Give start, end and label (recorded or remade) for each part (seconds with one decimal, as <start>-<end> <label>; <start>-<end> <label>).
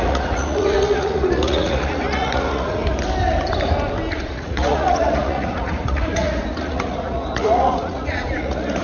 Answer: 0.0-2.8 remade; 2.8-4.1 recorded; 4.1-8.8 remade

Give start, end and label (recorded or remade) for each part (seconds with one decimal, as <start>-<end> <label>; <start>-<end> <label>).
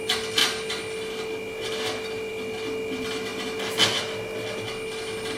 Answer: 0.0-5.4 recorded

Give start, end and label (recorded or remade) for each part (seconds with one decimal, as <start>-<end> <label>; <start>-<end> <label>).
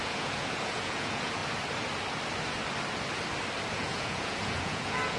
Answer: 0.0-1.4 remade; 1.4-3.7 recorded; 3.7-5.2 remade